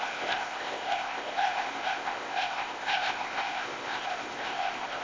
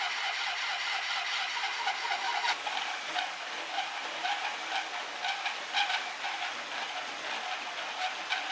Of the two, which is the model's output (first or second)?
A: first